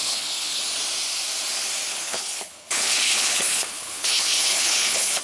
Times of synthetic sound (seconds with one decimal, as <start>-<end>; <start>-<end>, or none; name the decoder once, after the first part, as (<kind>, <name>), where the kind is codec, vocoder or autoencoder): 0.0-0.6 (codec, HILCodec); 1.9-5.2